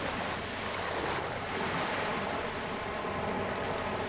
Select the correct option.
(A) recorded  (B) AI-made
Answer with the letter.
A